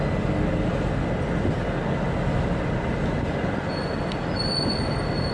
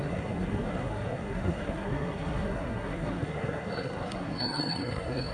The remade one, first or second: second